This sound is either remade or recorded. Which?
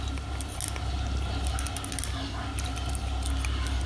recorded